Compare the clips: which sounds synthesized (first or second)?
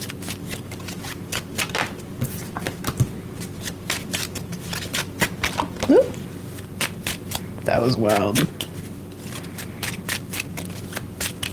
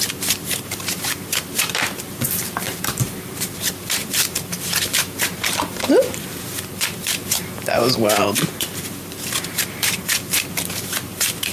second